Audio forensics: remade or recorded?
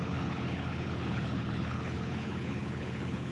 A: remade